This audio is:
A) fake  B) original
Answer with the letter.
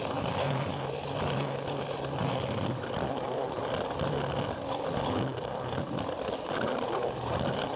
B